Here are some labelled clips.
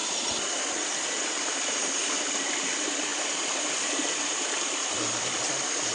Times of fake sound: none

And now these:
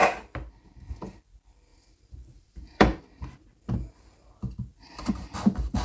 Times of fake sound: 1.7-3.0; 4.7-5.3

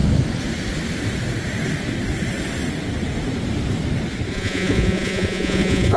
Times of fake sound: 4.3-6.0

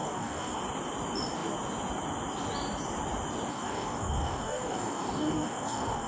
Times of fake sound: 0.0-0.6; 3.5-6.1

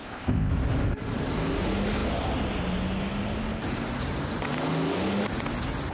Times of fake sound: 0.0-0.5

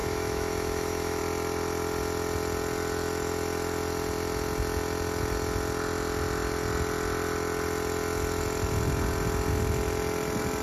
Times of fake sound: 0.0-1.2

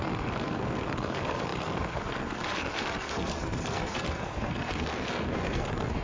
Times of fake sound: 0.0-6.0